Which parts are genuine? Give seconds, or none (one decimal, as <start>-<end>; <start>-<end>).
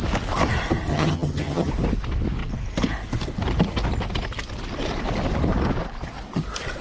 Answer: 0.0-0.9; 1.7-6.8